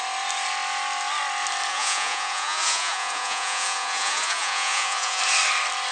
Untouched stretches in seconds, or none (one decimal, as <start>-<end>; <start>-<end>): 0.0-1.7; 5.2-5.9